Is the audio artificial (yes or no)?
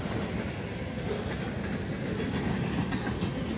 no